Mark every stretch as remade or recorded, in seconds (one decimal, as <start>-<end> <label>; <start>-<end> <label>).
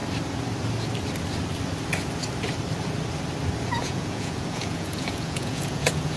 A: 0.0-3.7 recorded; 3.7-6.2 remade